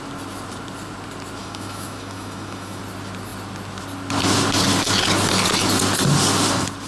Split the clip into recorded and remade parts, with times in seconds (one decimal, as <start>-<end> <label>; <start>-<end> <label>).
0.0-1.4 recorded; 1.4-2.8 remade; 2.8-6.9 recorded